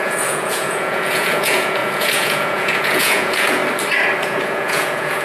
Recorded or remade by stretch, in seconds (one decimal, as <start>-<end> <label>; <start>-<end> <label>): 0.0-3.6 remade; 3.6-4.2 recorded; 4.2-5.2 remade